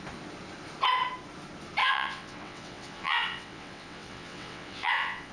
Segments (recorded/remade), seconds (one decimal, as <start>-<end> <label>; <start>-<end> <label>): 0.0-1.8 recorded; 1.8-5.3 remade